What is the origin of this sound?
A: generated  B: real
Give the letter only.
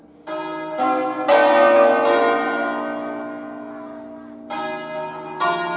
B